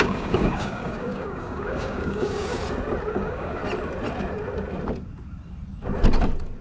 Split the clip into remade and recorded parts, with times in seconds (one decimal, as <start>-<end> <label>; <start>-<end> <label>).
0.0-2.6 remade; 2.6-3.1 recorded; 3.1-3.6 remade; 3.6-6.6 recorded